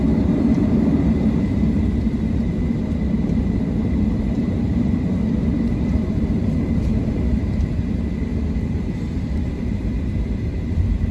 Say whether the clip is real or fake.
fake